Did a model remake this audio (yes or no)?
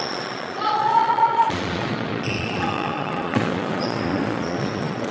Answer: yes